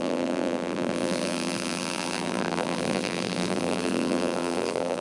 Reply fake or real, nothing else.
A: fake